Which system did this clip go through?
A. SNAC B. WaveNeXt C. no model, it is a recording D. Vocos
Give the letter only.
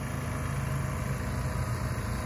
C